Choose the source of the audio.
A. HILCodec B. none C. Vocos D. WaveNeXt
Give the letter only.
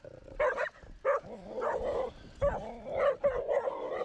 B